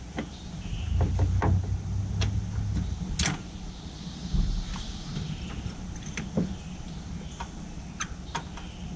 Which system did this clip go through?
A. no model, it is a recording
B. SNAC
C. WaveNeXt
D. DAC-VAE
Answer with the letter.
A